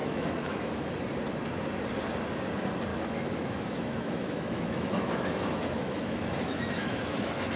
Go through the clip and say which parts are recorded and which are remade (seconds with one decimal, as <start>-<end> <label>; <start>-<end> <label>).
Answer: 0.0-0.9 remade; 0.9-2.9 recorded; 2.9-7.6 remade